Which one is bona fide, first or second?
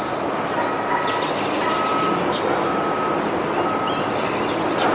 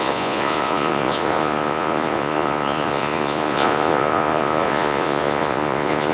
first